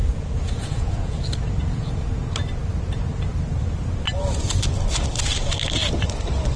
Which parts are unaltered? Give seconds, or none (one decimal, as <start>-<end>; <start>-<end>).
1.2-1.6; 2.2-6.6